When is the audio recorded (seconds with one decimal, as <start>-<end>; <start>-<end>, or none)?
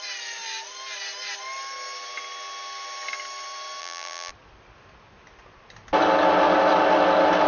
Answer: 0.0-3.8; 4.3-7.5